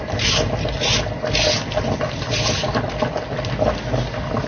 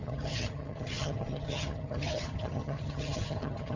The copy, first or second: second